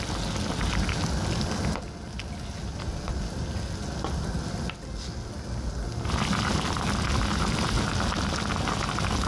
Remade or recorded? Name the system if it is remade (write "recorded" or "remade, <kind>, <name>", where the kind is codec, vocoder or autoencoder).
recorded